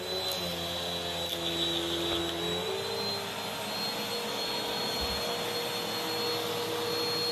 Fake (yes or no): no